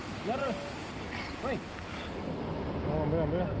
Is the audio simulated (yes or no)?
no